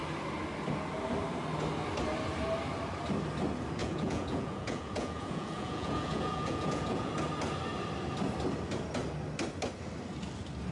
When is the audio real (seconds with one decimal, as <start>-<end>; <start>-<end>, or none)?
0.0-3.8; 7.1-10.7